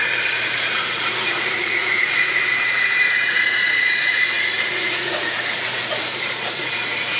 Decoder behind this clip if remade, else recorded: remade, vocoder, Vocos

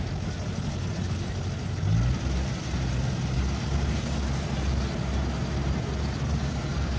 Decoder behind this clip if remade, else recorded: recorded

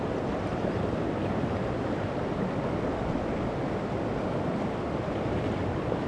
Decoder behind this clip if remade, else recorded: recorded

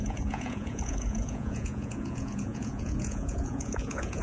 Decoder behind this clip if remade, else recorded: remade, vocoder, Vocos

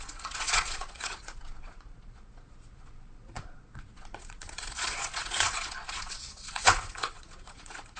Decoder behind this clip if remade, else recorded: remade, vocoder, Vocos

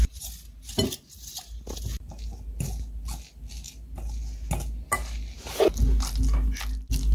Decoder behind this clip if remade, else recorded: recorded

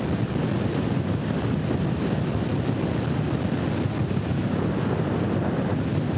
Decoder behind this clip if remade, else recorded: recorded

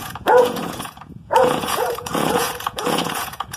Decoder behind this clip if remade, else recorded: remade, vocoder, Vocos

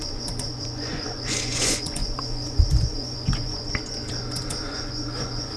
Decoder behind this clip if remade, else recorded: remade, vocoder, Vocos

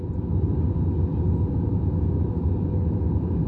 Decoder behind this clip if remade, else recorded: recorded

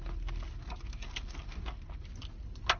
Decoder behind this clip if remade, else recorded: recorded